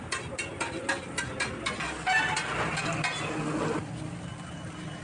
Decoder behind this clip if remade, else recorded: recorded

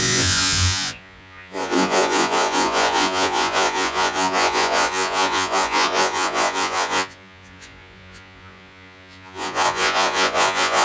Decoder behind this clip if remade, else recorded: remade, vocoder, Vocos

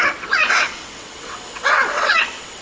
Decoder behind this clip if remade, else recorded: remade, vocoder, WaveNeXt